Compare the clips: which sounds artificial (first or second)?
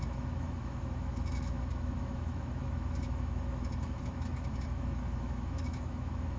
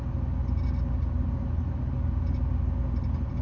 first